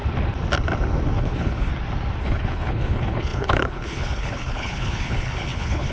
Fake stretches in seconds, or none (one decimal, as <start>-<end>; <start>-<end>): 1.2-1.7; 2.2-5.9